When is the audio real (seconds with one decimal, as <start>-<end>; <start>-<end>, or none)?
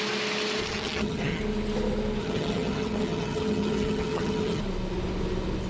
0.0-0.6; 1.4-2.2; 4.6-5.7